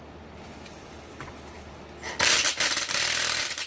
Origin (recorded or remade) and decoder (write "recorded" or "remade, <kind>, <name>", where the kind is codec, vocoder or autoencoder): recorded